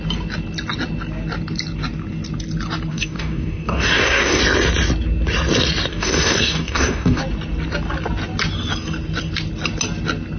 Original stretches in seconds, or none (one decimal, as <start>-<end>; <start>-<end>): 0.0-2.9; 4.4-5.9; 7.2-10.4